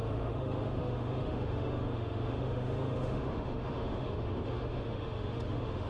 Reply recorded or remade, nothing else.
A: remade